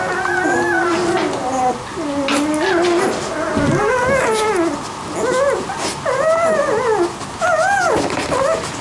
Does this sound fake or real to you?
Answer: real